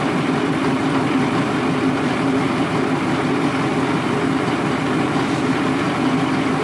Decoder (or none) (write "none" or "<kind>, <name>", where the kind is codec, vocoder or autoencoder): vocoder, BigVGAN v2